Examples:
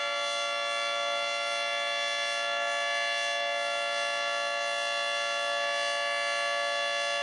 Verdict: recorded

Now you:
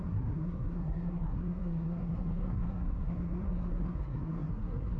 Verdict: remade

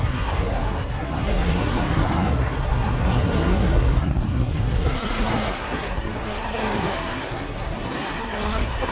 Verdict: remade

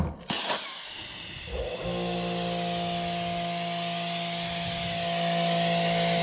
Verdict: recorded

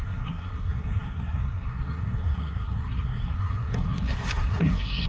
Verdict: remade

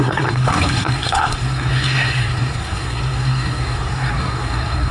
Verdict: remade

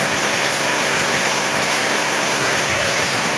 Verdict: remade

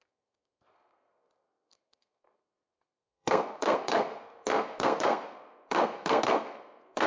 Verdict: remade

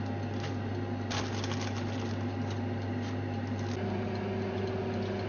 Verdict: recorded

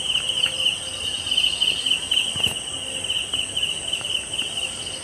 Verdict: recorded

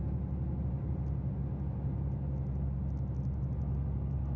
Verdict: recorded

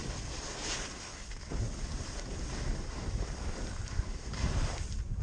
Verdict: recorded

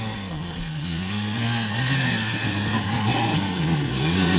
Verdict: remade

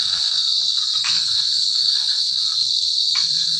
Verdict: remade